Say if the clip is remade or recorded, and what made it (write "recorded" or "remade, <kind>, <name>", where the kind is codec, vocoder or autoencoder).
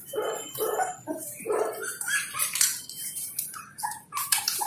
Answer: remade, vocoder, BigVGAN v2